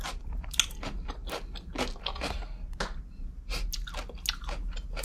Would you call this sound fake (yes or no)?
no